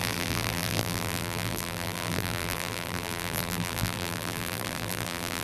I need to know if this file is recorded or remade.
remade